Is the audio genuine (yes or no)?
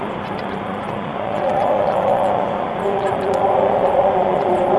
no